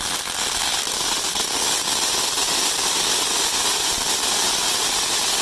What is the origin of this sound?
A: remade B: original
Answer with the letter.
B